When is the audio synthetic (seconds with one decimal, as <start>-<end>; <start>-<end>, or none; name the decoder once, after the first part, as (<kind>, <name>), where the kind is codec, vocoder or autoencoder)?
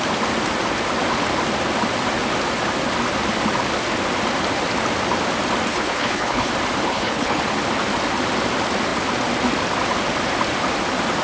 5.7-6.5 (codec, HILCodec); 6.9-7.4